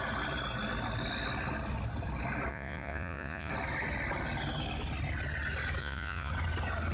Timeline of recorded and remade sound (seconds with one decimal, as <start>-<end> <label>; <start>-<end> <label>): 0.0-2.5 recorded; 2.5-3.5 remade; 3.5-5.8 recorded; 5.8-6.3 remade; 6.3-6.9 recorded